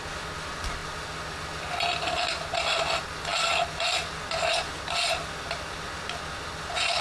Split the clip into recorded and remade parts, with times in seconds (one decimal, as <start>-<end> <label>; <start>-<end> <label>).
0.0-7.0 recorded